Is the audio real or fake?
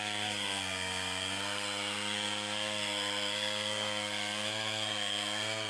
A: fake